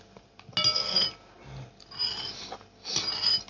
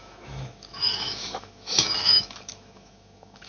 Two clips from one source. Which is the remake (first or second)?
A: second